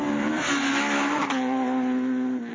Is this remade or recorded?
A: recorded